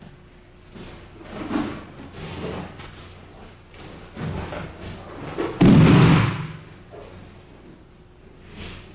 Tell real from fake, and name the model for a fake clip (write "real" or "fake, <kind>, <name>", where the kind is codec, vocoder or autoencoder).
real